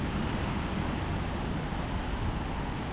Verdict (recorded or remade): recorded